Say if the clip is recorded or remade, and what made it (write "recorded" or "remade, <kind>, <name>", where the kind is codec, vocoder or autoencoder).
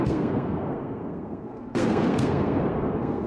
remade, codec, SNAC